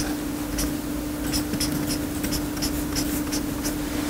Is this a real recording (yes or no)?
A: yes